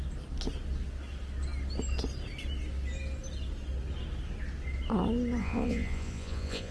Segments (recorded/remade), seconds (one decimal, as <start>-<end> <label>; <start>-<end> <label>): 0.0-5.4 recorded; 5.4-6.7 remade